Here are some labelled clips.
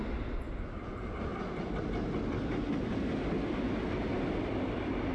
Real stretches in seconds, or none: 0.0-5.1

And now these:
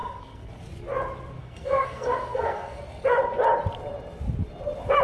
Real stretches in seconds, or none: 0.5-1.4; 2.8-5.0